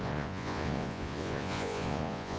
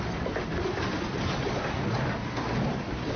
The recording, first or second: second